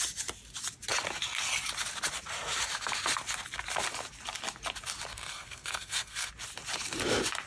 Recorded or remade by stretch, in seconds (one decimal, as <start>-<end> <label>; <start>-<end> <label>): 0.0-5.1 recorded; 5.1-6.3 remade; 6.3-7.5 recorded